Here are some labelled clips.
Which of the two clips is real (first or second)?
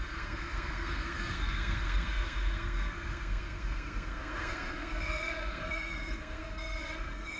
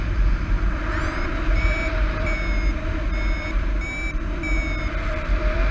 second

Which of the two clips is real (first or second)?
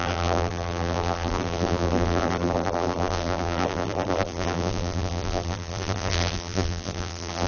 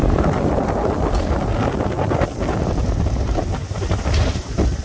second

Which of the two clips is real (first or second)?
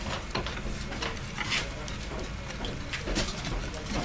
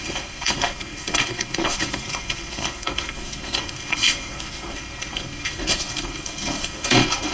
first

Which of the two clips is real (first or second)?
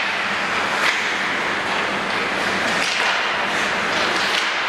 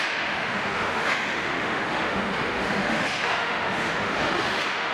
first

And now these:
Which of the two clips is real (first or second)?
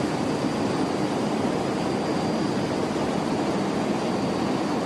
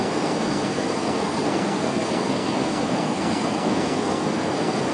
first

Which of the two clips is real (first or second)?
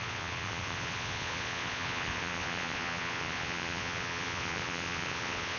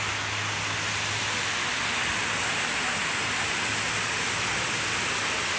second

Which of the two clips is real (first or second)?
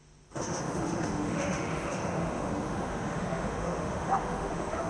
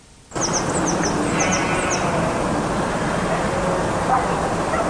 second